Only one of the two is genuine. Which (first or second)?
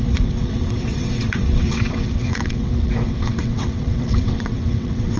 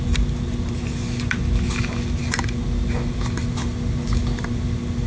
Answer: second